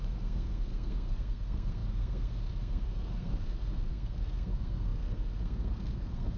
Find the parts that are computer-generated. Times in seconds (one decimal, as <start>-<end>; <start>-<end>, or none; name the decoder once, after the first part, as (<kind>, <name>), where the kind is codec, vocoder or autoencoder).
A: 0.0-6.4 (codec, SNAC)